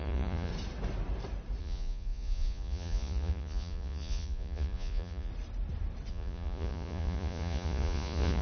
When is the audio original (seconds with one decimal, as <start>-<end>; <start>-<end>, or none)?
0.5-1.6; 5.3-6.1